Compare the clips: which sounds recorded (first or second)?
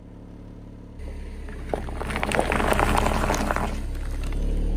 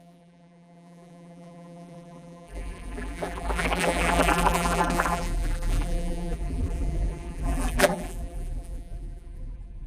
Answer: first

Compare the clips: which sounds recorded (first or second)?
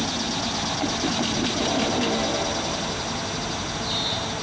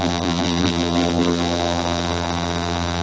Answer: first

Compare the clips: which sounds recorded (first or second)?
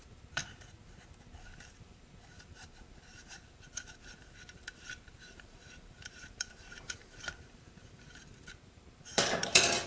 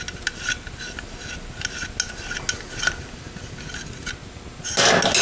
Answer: second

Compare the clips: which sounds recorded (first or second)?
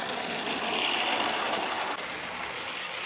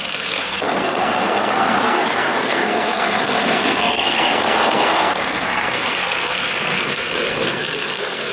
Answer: first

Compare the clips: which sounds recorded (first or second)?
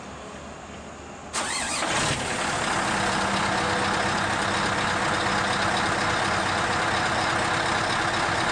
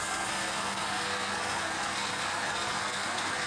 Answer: first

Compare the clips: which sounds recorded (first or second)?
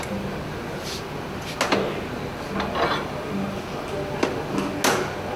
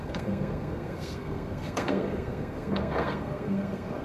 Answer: first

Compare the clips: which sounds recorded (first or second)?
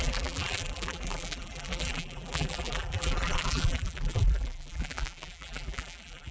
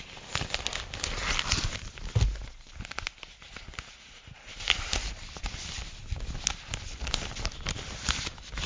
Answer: second